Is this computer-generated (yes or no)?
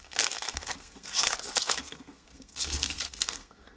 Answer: yes